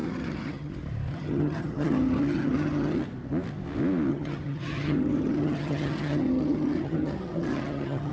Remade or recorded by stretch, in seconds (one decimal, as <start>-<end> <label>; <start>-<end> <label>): 0.0-0.7 remade; 0.7-1.1 recorded; 1.1-3.0 remade; 3.0-4.1 recorded; 4.1-8.1 remade